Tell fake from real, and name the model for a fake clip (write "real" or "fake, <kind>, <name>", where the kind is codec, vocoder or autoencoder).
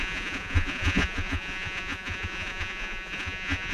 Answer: fake, vocoder, Vocos